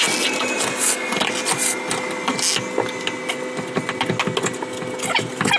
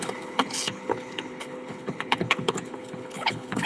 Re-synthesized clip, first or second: second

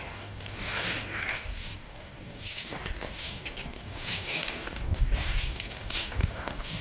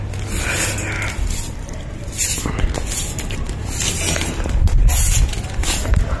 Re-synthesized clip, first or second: first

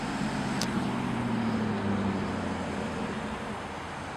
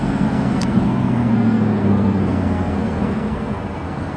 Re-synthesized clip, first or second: second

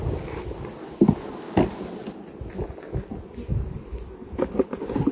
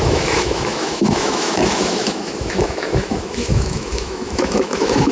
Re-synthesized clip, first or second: second